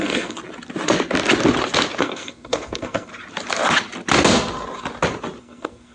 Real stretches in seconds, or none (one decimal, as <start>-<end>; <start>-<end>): 0.4-2.0; 3.1-5.4